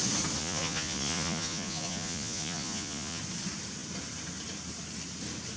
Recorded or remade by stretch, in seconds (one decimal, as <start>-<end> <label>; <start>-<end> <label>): 0.0-0.4 recorded; 0.4-3.2 remade; 3.2-5.6 recorded